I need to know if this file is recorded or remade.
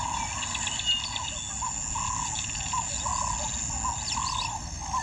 recorded